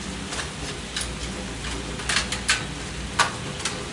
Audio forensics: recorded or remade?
recorded